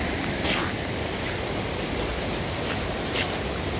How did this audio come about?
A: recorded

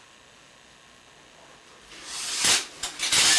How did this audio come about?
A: recorded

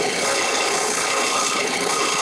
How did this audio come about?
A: remade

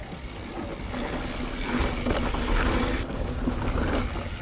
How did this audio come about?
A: recorded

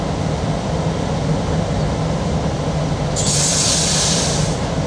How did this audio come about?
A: recorded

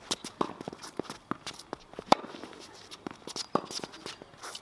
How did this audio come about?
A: recorded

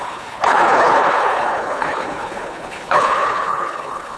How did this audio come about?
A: remade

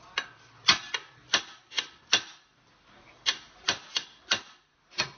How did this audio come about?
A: recorded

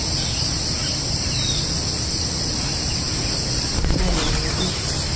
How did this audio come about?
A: recorded